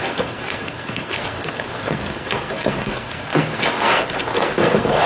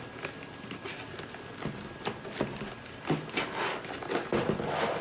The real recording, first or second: second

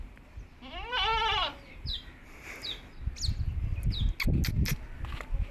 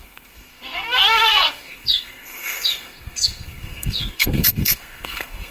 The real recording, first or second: first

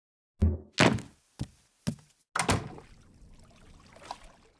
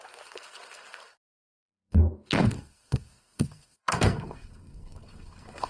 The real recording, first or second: first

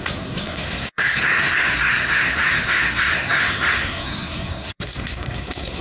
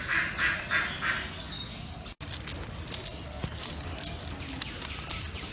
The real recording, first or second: second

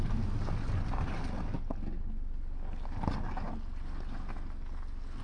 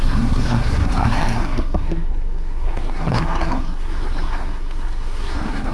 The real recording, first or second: first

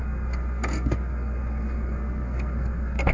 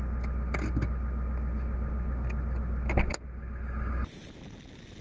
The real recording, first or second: second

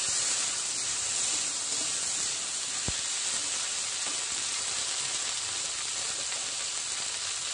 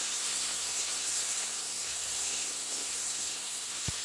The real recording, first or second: first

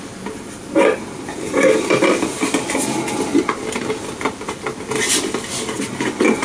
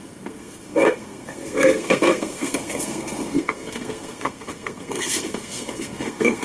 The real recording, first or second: first